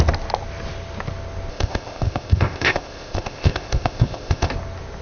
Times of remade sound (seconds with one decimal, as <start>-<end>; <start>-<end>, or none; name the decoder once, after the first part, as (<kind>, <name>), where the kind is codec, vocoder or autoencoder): 1.5-4.5 (codec, ZipCodec)

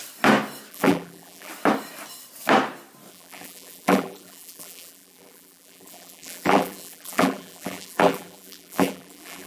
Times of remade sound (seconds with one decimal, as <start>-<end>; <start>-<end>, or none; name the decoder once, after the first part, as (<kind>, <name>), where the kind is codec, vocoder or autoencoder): 0.7-1.5 (vocoder, BigVGAN v2); 3.1-9.5

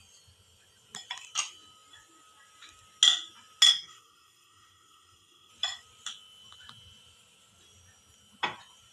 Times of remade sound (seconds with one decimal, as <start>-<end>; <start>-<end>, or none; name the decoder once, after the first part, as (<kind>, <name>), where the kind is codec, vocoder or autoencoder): 3.7-5.5 (codec, SNAC)

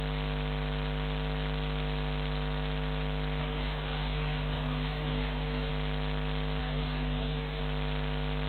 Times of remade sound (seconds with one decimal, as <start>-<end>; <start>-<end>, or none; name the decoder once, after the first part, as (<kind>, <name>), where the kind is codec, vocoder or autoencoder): 3.4-5.7 (codec, DAC); 6.6-7.6

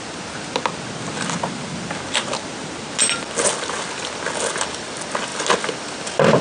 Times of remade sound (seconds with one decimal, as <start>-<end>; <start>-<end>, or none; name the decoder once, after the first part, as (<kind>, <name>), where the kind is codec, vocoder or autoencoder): none

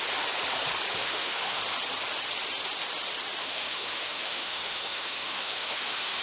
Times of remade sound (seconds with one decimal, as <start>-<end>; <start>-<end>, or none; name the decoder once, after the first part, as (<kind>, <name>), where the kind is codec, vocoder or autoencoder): 1.0-1.6 (autoencoder, DAC-VAE); 3.4-6.2

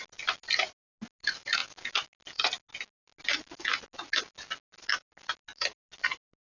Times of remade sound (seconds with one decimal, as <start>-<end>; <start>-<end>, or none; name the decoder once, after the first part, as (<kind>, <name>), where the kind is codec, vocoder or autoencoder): none